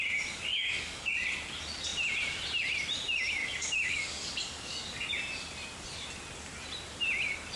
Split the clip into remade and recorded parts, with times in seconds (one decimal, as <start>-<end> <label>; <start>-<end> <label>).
0.0-0.5 recorded; 0.5-1.1 remade; 1.1-3.4 recorded; 3.4-5.1 remade; 5.1-7.6 recorded

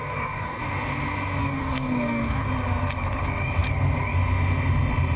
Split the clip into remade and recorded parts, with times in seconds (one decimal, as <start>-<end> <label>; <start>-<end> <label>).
0.0-0.6 remade; 0.6-1.4 recorded; 1.4-2.5 remade; 2.5-5.2 recorded

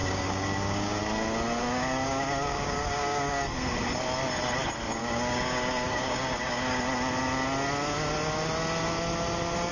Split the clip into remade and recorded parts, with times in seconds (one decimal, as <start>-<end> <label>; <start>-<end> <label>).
0.0-1.0 remade; 1.0-1.6 recorded; 1.6-3.4 remade; 3.4-5.0 recorded; 5.0-6.8 remade; 6.8-9.7 recorded